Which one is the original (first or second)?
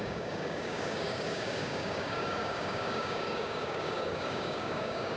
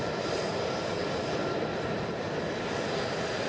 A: second